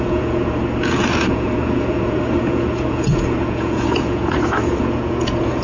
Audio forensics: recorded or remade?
remade